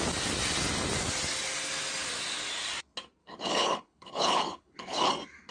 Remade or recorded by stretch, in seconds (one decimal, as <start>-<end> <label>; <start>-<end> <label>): 0.0-3.2 recorded; 3.2-5.1 remade; 5.1-5.5 recorded